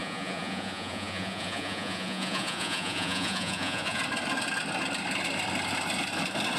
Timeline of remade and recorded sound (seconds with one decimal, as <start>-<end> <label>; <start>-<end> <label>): 0.0-4.0 remade; 4.0-6.6 recorded